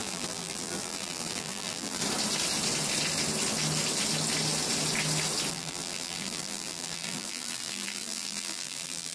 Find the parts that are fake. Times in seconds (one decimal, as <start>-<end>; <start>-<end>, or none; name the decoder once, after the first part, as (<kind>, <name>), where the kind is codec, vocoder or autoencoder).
0.0-2.0 (vocoder, BigVGAN v2); 5.5-9.1